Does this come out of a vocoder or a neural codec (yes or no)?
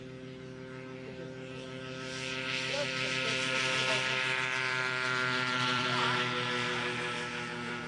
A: yes